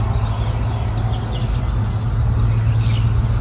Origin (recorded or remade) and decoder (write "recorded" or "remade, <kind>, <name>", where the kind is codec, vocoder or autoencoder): recorded